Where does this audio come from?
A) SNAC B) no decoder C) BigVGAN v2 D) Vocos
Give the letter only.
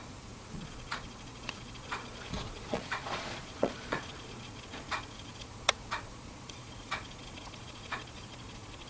D